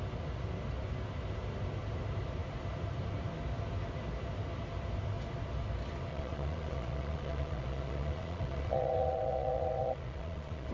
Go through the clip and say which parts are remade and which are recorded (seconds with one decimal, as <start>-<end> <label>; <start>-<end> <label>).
0.0-6.1 recorded; 6.1-10.7 remade